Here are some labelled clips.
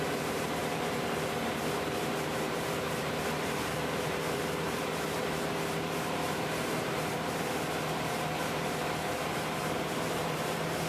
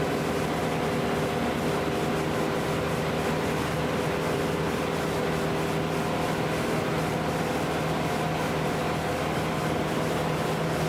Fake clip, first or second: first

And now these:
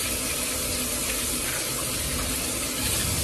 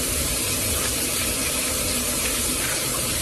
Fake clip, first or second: second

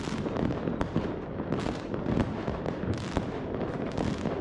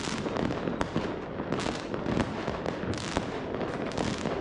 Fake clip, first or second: first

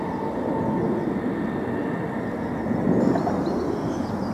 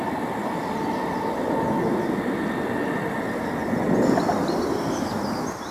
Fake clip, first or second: second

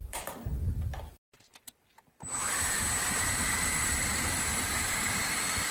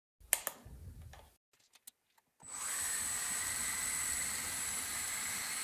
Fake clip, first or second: first